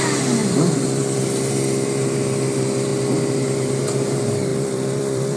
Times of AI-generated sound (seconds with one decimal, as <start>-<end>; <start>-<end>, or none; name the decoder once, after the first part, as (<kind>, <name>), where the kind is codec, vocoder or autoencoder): 0.4-1.2 (vocoder, BigVGAN v2); 4.5-5.4